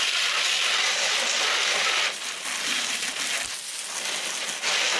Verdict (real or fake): real